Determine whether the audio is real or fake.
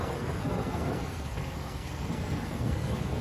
fake